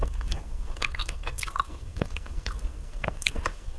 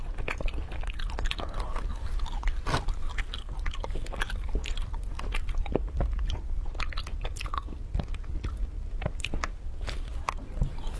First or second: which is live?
second